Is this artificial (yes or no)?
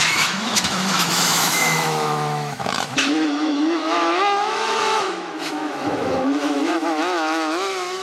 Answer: yes